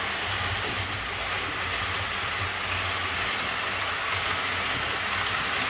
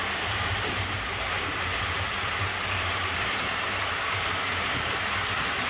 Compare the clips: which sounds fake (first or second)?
second